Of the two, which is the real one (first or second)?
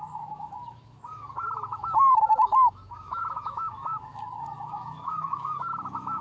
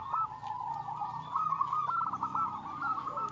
second